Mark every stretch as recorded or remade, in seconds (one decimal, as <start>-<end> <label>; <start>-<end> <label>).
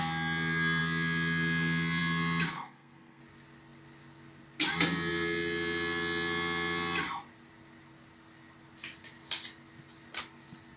0.0-2.5 recorded; 2.5-3.2 remade; 3.2-10.8 recorded